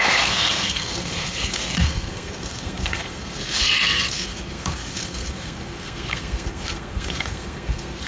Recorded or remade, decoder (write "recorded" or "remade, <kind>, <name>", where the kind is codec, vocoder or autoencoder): remade, codec, SNAC